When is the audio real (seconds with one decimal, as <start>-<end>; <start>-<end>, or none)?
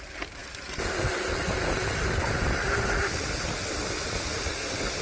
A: 0.0-5.0